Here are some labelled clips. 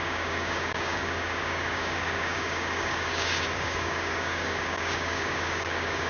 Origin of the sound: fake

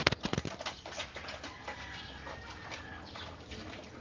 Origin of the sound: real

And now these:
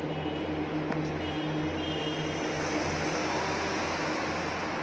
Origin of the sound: real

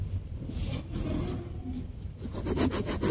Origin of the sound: real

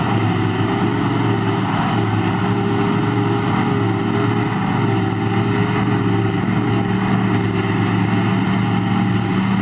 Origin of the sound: real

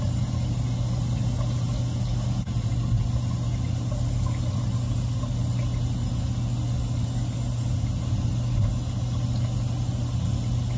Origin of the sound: real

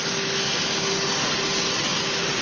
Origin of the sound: real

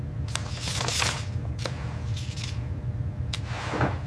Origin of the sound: real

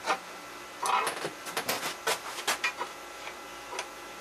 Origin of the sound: real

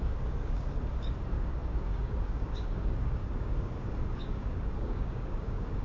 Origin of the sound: fake